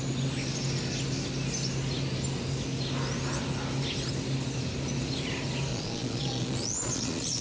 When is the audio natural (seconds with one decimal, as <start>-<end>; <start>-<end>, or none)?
0.0-5.7